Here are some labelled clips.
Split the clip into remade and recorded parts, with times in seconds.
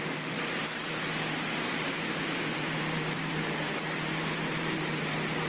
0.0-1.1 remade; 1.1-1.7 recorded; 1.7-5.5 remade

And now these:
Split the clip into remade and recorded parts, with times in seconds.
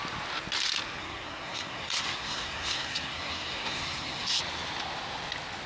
0.0-1.0 recorded; 1.0-4.4 remade; 4.4-5.7 recorded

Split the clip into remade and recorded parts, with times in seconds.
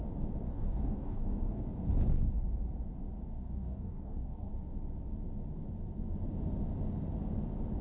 0.0-0.5 recorded; 0.5-1.6 remade; 1.6-3.3 recorded; 3.3-4.5 remade; 4.5-7.8 recorded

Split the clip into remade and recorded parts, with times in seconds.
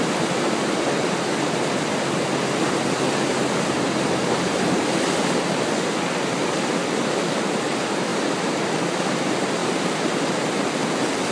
0.0-3.3 remade; 3.3-7.0 recorded; 7.0-8.1 remade; 8.1-9.0 recorded; 9.0-9.6 remade; 9.6-10.6 recorded; 10.6-11.3 remade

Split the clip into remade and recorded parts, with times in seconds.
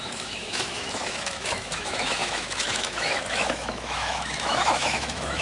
0.0-5.4 remade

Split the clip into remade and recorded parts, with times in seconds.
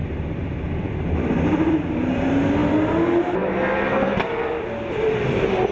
0.0-5.7 recorded